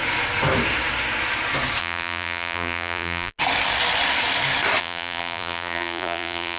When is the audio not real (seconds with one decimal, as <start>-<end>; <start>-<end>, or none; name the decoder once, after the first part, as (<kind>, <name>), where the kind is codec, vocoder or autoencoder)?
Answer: 1.8-3.4 (vocoder, BigVGAN v2); 4.8-6.6